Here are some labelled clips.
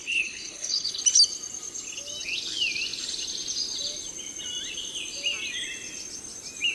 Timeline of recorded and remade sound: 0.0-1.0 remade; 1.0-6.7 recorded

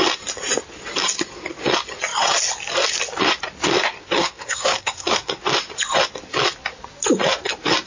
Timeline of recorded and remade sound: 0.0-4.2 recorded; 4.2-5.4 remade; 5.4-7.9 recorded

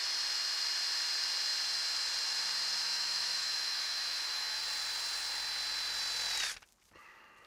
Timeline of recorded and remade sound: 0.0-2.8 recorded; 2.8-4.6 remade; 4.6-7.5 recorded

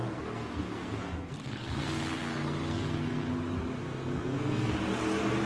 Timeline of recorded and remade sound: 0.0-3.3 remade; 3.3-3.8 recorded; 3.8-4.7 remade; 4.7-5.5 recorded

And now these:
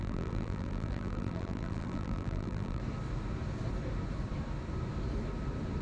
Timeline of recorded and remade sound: 0.0-2.8 remade; 2.8-5.8 recorded

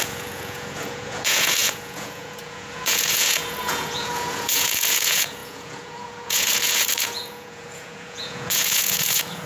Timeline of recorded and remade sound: 0.0-9.5 remade